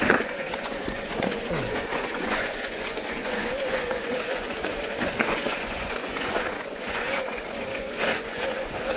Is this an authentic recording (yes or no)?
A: no